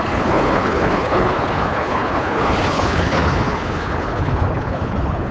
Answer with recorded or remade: remade